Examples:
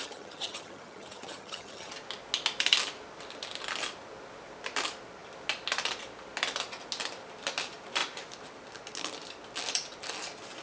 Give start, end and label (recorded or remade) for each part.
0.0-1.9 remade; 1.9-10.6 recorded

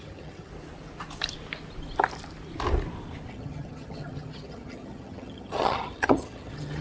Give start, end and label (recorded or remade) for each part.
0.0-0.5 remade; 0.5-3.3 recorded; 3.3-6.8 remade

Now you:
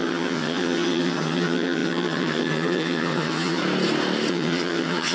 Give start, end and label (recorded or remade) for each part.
0.0-3.6 remade; 3.6-4.3 recorded; 4.3-5.1 remade